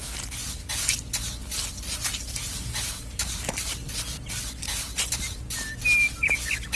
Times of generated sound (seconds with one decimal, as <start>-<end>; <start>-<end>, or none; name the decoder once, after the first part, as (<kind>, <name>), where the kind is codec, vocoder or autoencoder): none